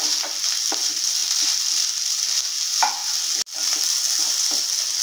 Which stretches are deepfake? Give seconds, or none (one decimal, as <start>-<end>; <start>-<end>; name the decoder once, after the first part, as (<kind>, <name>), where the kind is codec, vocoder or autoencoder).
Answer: none